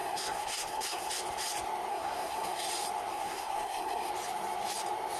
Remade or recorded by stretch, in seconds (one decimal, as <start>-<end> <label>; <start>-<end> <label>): 0.0-1.1 remade; 1.1-1.9 recorded; 1.9-2.7 remade; 2.7-3.1 recorded; 3.1-4.1 remade; 4.1-5.2 recorded